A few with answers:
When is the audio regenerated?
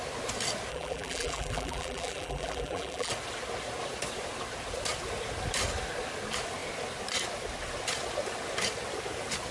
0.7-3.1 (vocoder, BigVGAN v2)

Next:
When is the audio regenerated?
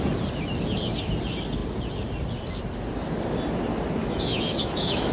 4.0-5.1 (autoencoder, DAC-VAE)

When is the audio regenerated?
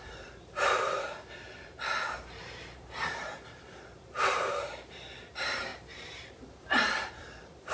0.0-7.7 (vocoder, BigVGAN v2)